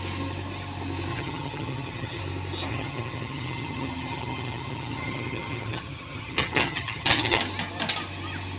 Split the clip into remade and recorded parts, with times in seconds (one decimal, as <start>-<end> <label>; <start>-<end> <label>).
0.0-1.1 recorded; 1.1-2.2 remade; 2.2-2.7 recorded; 2.7-7.4 remade; 7.4-8.6 recorded